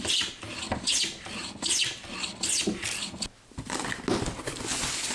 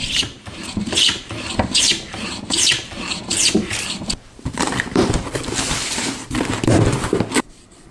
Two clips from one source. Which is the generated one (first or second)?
second